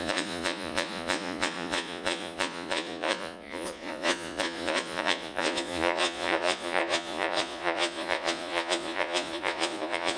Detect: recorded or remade remade